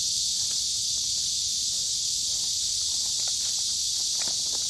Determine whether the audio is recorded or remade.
recorded